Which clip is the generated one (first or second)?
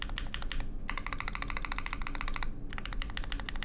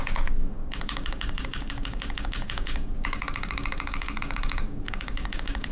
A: second